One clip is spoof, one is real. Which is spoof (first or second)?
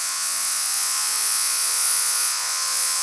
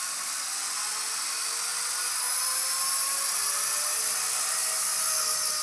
first